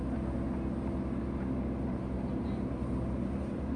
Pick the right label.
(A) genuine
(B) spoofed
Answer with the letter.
A